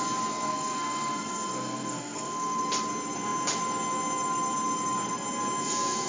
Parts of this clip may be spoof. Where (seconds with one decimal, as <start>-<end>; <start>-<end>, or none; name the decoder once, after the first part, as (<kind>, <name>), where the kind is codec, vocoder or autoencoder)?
0.5-2.6 (codec, SNAC)